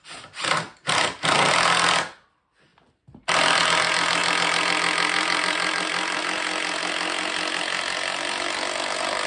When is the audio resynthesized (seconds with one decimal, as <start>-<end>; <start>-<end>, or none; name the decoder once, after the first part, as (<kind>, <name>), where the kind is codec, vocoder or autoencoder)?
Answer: 2.7-3.6 (vocoder, BigVGAN v2); 4.2-6.2